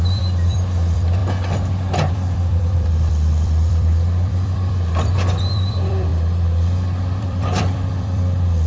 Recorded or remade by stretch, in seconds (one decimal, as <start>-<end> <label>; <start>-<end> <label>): 0.0-1.2 remade; 1.2-2.1 recorded; 2.1-6.1 remade; 6.1-7.2 recorded; 7.2-8.7 remade